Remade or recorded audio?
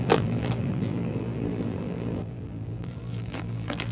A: remade